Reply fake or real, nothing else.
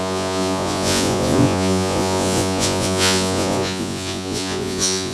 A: fake